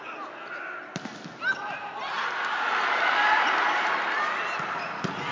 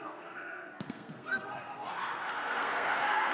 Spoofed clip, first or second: second